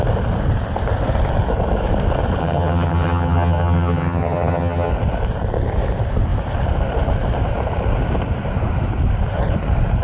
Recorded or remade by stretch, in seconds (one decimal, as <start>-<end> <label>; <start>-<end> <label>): 0.0-2.4 recorded; 2.4-4.9 remade; 4.9-10.0 recorded